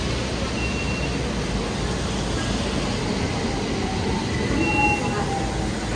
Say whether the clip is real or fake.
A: real